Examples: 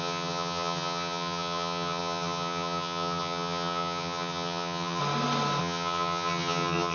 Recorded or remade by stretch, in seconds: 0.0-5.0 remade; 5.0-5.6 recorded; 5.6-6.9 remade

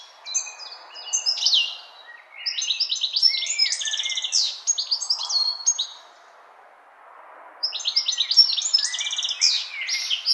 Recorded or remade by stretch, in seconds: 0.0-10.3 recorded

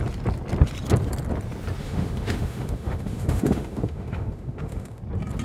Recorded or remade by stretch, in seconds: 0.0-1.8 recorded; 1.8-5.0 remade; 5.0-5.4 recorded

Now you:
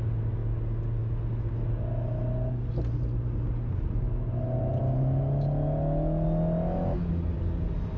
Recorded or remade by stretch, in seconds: 0.0-8.0 recorded

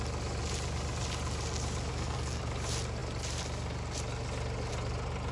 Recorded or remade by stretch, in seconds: 0.0-1.9 recorded; 1.9-2.4 remade; 2.4-5.3 recorded